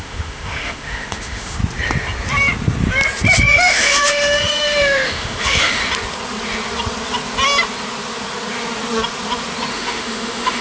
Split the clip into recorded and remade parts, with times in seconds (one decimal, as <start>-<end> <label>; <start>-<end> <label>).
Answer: 0.0-1.6 remade; 1.6-3.4 recorded; 3.4-5.8 remade; 5.8-9.7 recorded; 9.7-10.6 remade